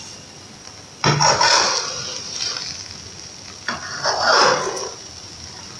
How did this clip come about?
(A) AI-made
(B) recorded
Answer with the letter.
B